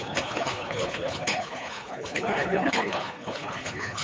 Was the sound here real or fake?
fake